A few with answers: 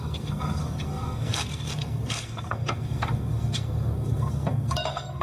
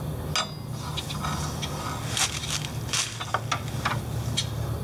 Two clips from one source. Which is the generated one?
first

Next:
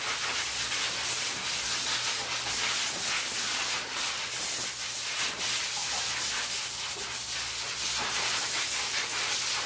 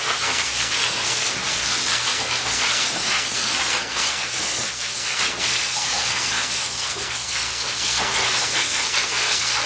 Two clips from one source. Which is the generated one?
second